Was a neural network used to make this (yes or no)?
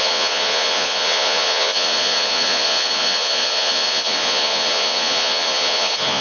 yes